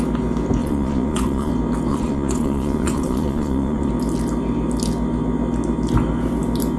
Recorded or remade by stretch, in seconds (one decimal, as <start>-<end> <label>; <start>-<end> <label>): 0.0-0.6 recorded; 0.6-1.5 remade; 1.5-1.9 recorded; 1.9-3.9 remade; 3.9-6.8 recorded